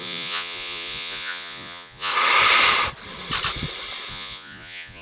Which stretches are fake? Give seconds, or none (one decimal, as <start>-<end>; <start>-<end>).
0.0-2.1; 4.1-5.0